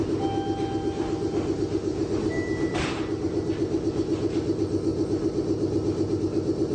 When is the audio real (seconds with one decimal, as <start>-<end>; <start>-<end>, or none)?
0.0-6.7